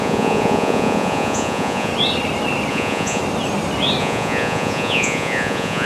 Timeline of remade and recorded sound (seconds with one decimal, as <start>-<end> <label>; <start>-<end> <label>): 0.0-1.9 remade; 1.9-2.7 recorded; 2.7-3.2 remade; 3.2-4.0 recorded; 4.0-5.9 remade

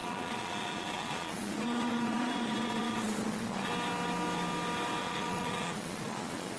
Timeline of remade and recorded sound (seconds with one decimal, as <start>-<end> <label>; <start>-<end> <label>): 0.0-3.7 remade; 3.7-5.0 recorded; 5.0-6.6 remade